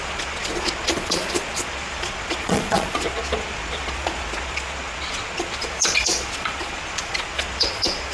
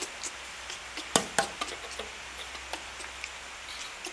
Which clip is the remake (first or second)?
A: first